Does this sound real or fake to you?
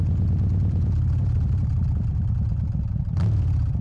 fake